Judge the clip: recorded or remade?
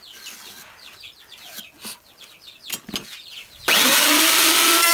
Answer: recorded